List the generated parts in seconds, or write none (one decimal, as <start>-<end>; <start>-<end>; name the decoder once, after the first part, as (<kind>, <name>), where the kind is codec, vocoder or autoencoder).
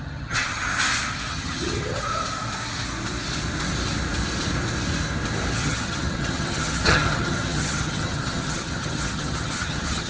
0.0-0.7 (vocoder, HiFi-GAN); 1.3-2.1; 5.5-10.1